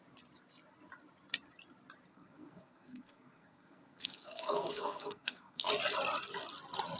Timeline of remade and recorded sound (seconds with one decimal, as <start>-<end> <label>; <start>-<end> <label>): 0.0-2.1 recorded; 2.1-5.7 remade; 5.7-7.0 recorded

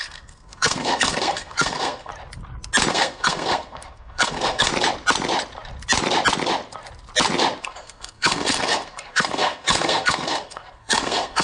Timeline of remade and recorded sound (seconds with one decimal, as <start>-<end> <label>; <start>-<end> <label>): 0.0-2.1 remade; 2.1-2.9 recorded; 2.9-4.7 remade; 4.7-7.6 recorded; 7.6-11.4 remade